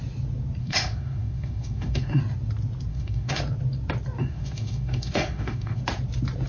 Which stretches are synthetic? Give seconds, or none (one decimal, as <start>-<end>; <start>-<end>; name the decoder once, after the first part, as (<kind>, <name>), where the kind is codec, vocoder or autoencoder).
0.6-2.2 (autoencoder, DAC-VAE); 2.9-3.4; 4.2-5.8